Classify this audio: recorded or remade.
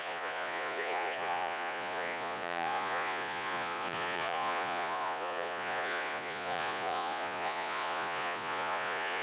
remade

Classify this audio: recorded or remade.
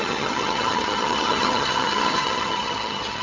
remade